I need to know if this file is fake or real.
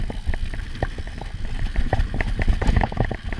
real